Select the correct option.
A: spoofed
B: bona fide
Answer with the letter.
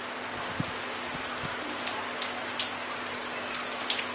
B